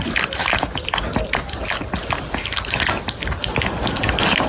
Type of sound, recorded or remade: recorded